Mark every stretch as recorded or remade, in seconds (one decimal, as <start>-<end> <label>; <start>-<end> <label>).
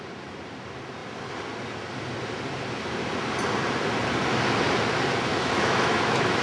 0.0-5.3 recorded; 5.3-6.4 remade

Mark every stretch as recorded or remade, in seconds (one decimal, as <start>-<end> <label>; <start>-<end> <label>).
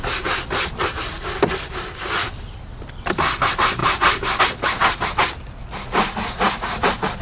0.0-7.2 recorded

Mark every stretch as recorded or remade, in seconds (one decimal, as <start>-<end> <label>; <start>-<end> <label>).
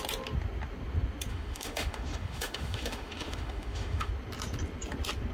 0.0-1.3 recorded; 1.3-4.1 remade; 4.1-5.3 recorded